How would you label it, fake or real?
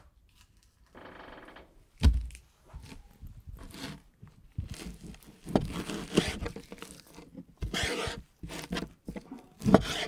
real